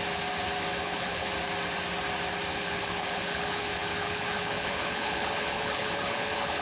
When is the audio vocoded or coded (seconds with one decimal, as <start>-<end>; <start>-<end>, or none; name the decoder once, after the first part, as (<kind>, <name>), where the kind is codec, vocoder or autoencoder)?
0.8-1.3 (codec, HILCodec); 2.5-6.6